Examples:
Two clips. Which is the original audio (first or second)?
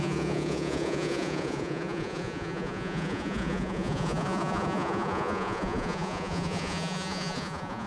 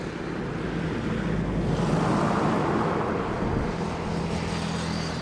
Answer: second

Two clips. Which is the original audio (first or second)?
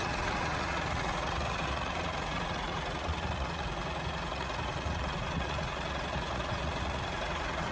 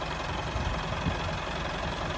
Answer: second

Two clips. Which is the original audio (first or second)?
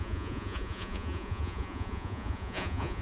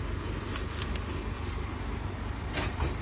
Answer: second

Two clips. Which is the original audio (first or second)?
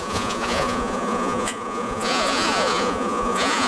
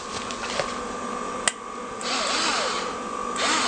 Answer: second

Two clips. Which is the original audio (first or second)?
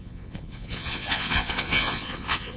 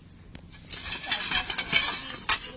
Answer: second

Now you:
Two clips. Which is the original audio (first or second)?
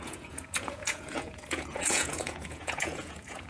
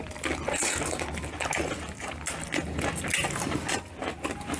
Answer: second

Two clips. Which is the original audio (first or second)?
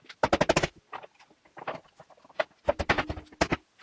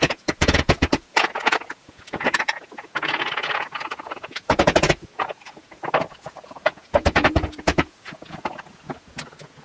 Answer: first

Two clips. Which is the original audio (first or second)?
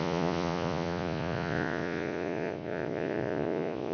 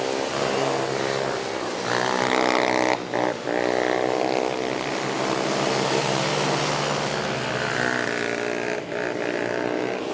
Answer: second